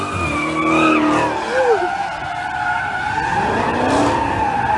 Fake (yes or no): no